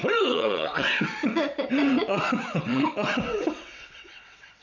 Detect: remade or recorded remade